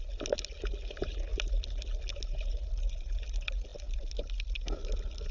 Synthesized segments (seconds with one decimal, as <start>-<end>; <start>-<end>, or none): none